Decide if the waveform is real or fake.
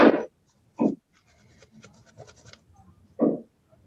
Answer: real